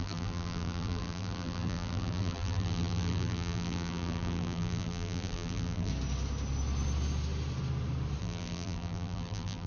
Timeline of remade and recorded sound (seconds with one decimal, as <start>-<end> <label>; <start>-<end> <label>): 0.0-5.9 remade; 5.9-8.2 recorded; 8.2-9.7 remade